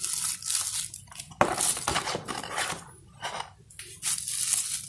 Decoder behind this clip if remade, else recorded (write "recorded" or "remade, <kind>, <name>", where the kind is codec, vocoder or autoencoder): recorded